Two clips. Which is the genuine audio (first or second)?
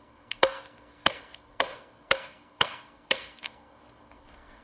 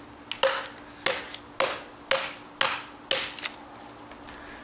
second